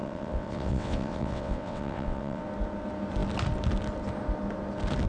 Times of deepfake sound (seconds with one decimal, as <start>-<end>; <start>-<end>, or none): 0.0-2.4